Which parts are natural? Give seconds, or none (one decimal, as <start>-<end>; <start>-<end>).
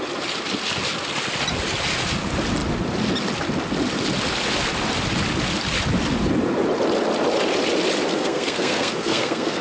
0.0-8.1